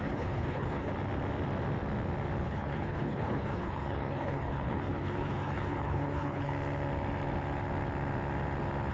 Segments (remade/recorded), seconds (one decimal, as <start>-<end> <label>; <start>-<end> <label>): 0.0-0.9 remade; 0.9-2.4 recorded; 2.4-6.5 remade; 6.5-8.9 recorded